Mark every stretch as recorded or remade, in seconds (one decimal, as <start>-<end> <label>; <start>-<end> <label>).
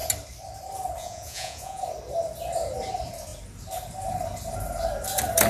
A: 0.0-1.0 recorded; 1.0-1.8 remade; 1.8-5.5 recorded